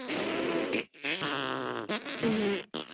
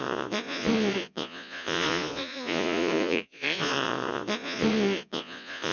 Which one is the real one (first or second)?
first